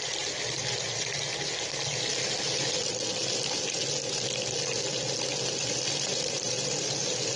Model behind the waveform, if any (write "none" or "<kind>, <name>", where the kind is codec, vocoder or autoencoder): none